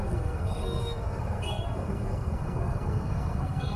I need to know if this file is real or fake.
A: fake